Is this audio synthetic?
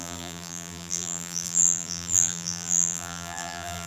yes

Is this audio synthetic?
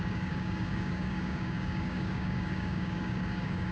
yes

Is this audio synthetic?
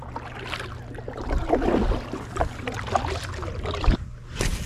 no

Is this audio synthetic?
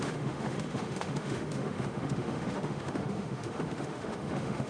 yes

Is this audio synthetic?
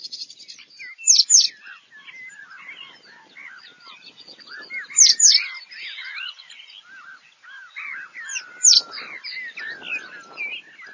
no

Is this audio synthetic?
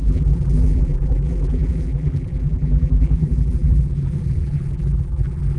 yes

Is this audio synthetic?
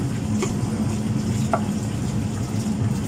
no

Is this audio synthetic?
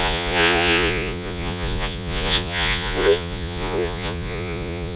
yes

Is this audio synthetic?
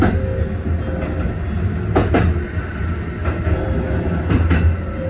no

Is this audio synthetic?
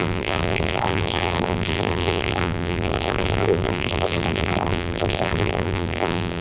yes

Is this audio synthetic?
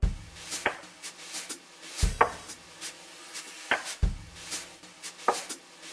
no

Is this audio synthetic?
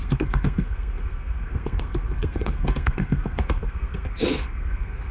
yes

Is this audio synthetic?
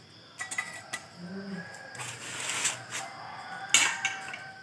no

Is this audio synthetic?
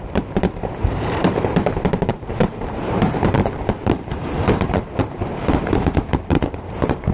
yes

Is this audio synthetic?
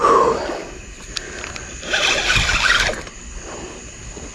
no